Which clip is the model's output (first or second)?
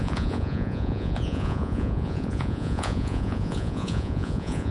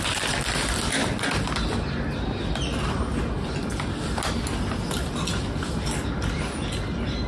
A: first